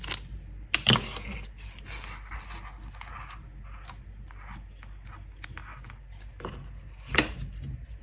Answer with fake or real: real